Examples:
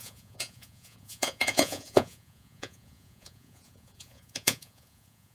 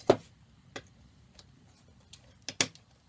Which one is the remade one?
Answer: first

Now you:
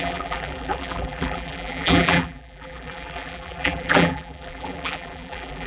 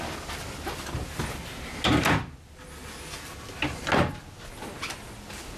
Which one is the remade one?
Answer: first